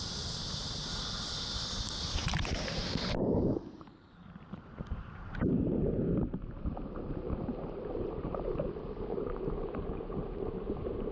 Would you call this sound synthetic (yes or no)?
yes